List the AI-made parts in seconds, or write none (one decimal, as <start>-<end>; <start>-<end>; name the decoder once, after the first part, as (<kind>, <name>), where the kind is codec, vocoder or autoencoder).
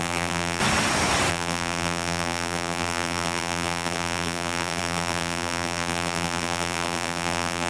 0.0-0.6 (vocoder, BigVGAN v2); 1.3-7.7